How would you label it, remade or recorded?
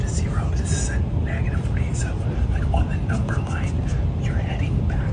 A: recorded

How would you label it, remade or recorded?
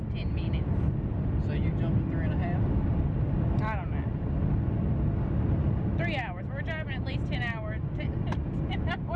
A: recorded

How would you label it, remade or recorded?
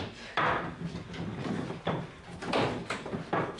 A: recorded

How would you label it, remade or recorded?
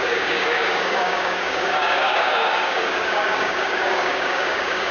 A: remade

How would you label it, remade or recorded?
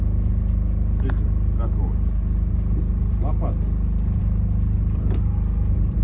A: recorded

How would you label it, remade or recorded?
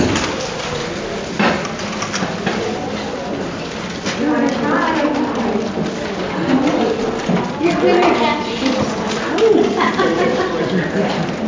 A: recorded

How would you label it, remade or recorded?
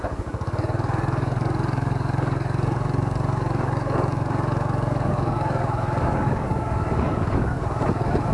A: remade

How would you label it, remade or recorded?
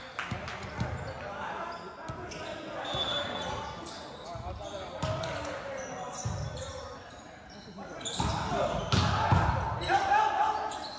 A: recorded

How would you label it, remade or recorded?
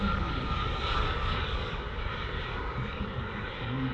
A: remade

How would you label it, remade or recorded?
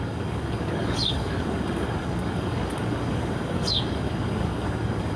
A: remade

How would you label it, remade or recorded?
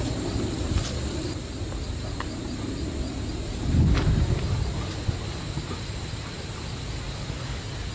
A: recorded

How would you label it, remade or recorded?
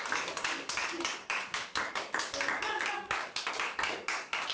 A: remade